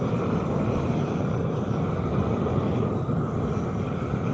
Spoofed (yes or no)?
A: no